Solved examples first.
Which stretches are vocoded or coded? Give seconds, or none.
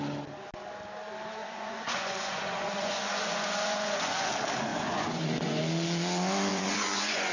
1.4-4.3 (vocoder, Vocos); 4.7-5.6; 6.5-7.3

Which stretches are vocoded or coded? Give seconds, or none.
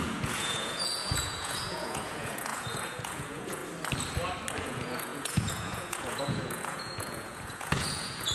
0.0-3.6 (vocoder, Vocos); 4.6-8.3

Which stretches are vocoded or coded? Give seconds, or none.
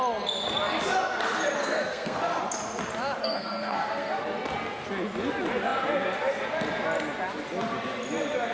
1.6-2.4 (codec, SNAC); 3.2-4.2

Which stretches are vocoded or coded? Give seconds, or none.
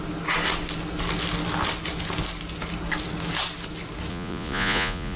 4.1-5.2 (vocoder, Vocos)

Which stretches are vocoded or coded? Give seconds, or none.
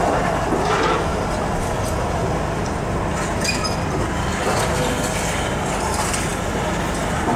none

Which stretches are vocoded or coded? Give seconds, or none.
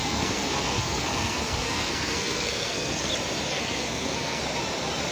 0.0-3.1 (codec, SNAC); 3.5-4.4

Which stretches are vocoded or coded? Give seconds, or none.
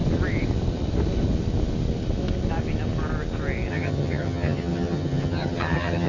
3.7-6.1 (vocoder, HiFi-GAN)